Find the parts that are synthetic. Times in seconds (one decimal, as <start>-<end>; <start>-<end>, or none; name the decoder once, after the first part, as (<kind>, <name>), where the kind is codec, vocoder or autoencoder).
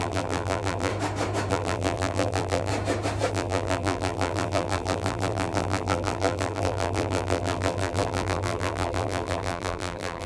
0.0-0.9 (vocoder, BigVGAN v2); 1.5-2.7; 3.3-10.3